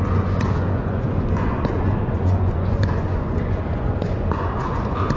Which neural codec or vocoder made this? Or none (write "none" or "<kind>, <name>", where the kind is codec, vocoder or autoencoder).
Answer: vocoder, Vocos